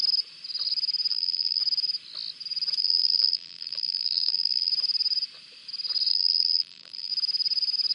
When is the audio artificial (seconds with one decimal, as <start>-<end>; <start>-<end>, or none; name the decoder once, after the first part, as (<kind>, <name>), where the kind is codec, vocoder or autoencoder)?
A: 1.1-1.6 (vocoder, BigVGAN v2); 2.8-4.7; 6.1-7.1